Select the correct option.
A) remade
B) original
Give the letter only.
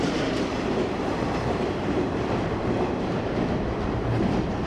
A